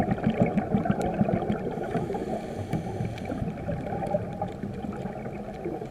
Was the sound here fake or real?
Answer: real